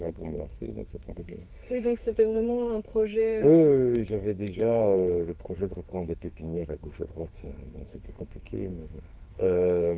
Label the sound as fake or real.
fake